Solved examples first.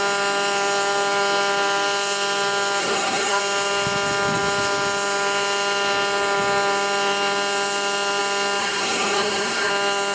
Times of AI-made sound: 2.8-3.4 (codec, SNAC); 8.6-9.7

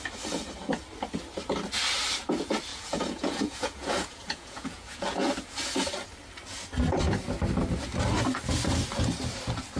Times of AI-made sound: 2.7-5.3 (vocoder, Vocos)

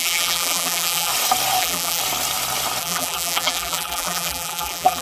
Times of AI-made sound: 0.0-1.1 (vocoder, BigVGAN v2); 1.6-2.0; 2.8-5.0

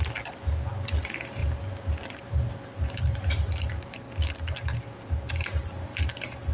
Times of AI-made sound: none

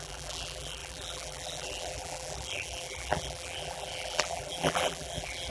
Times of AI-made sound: 0.0-5.5 (vocoder, BigVGAN v2)

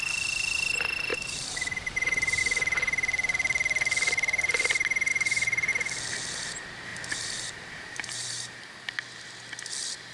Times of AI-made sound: 1.1-2.4 (vocoder, BigVGAN v2); 5.1-5.7; 6.9-8.9

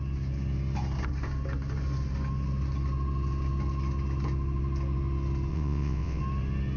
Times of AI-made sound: 5.5-6.2 (vocoder, WaveNeXt)

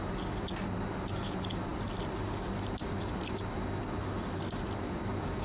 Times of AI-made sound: none